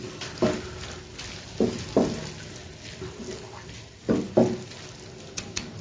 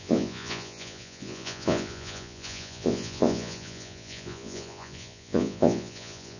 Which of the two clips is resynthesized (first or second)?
second